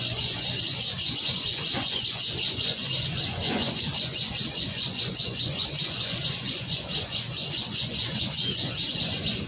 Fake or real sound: fake